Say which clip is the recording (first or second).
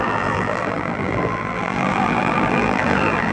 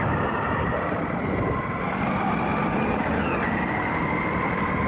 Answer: second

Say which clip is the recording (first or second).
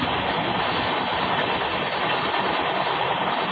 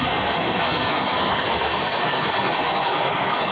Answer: first